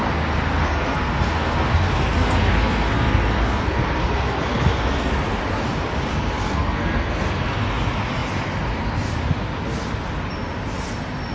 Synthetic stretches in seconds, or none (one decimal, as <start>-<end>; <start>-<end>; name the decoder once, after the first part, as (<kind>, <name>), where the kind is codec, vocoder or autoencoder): 0.6-5.1 (codec, SNAC); 6.1-7.7